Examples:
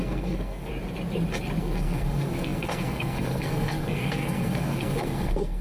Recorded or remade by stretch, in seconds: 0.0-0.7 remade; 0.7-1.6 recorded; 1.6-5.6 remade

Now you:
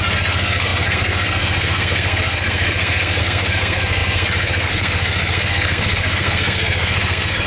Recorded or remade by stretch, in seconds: 0.0-7.5 remade